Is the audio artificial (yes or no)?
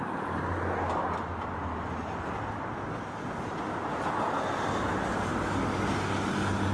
no